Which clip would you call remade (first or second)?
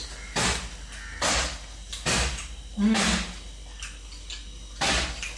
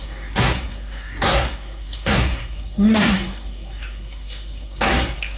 second